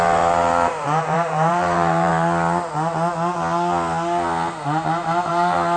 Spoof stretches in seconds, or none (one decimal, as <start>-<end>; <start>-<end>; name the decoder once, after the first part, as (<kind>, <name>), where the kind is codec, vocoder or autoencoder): 0.0-2.1 (vocoder, BigVGAN v2); 5.3-5.8